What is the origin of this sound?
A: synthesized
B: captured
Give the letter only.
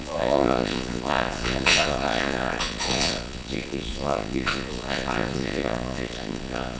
A